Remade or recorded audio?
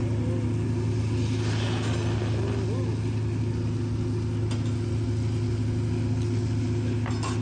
recorded